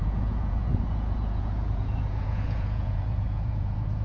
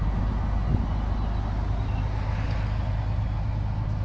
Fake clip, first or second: first